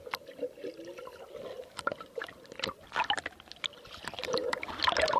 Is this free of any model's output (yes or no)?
yes